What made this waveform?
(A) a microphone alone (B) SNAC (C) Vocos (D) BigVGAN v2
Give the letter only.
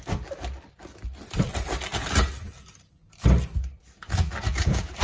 A